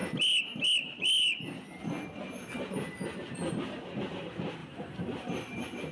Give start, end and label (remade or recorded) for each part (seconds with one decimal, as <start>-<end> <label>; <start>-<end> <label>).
0.0-4.6 recorded; 4.6-5.9 remade